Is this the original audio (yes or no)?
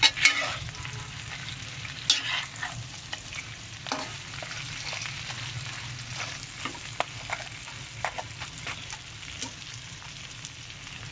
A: yes